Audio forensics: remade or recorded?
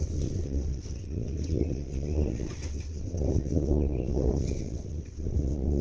remade